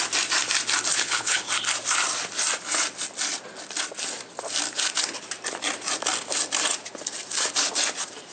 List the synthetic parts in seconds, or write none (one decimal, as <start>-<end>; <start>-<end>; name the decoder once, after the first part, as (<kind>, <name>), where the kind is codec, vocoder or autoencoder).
0.9-1.5 (codec, HILCodec)